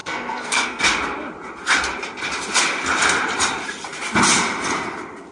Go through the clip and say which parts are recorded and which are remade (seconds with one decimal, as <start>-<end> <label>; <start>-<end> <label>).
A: 0.0-0.8 remade; 0.8-5.3 recorded